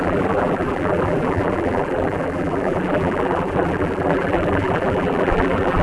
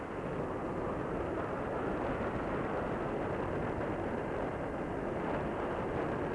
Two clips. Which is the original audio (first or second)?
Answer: second